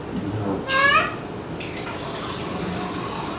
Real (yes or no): yes